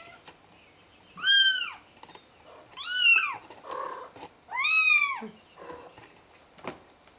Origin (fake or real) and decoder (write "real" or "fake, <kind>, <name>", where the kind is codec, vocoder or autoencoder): real